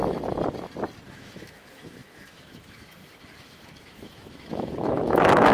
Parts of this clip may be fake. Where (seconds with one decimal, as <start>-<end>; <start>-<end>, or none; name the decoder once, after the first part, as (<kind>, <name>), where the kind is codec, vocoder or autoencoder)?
1.1-5.5 (autoencoder, DAC-VAE)